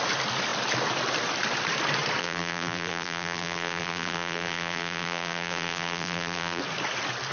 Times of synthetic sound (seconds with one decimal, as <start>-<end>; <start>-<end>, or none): 2.2-6.6